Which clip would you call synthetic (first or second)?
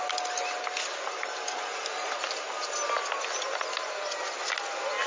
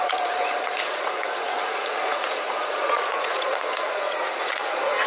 second